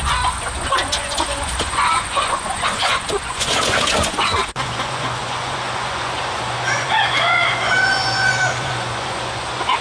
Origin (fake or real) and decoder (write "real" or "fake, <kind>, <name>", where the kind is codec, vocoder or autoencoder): fake, vocoder, Vocos